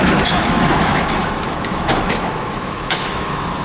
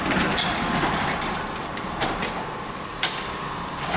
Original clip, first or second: second